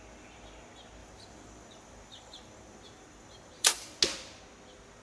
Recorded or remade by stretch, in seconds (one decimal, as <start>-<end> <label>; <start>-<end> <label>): 0.0-1.0 recorded; 1.0-4.0 remade; 4.0-5.0 recorded